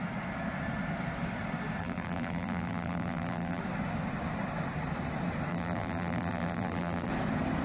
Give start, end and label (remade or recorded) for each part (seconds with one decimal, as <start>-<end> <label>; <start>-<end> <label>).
0.0-1.8 recorded; 1.8-3.6 remade; 3.6-5.5 recorded; 5.5-7.1 remade; 7.1-7.6 recorded